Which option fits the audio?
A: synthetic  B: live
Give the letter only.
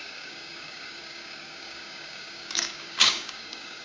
A